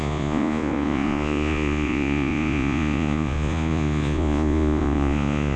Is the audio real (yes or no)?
no